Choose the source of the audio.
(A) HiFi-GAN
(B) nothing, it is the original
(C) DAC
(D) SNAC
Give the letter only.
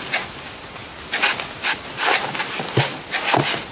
B